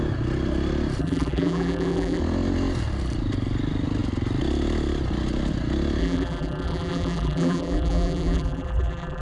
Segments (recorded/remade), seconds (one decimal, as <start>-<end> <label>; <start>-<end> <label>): 0.0-1.0 recorded; 1.0-2.2 remade; 2.2-6.0 recorded; 6.0-9.2 remade

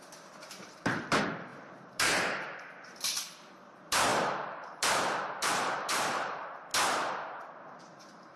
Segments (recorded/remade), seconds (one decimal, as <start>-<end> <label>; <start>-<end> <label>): 0.0-6.7 remade; 6.7-7.8 recorded; 7.8-8.4 remade

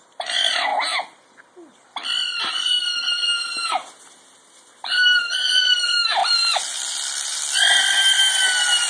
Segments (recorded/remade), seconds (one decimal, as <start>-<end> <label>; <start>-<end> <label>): 0.0-0.7 remade; 0.7-2.4 recorded; 2.4-6.2 remade; 6.2-8.9 recorded

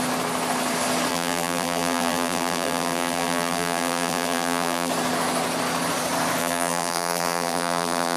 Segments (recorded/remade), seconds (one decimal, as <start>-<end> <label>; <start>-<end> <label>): 0.0-1.1 recorded; 1.1-4.9 remade; 4.9-6.4 recorded; 6.4-8.2 remade

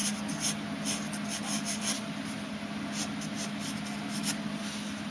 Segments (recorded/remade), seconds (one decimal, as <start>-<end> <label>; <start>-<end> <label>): 0.0-5.1 recorded

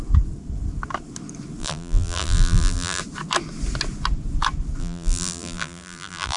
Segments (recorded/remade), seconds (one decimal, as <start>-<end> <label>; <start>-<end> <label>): 0.0-1.6 recorded; 1.6-3.0 remade; 3.0-4.8 recorded; 4.8-6.4 remade